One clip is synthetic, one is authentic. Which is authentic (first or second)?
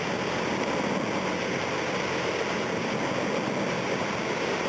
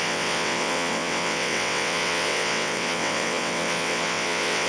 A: first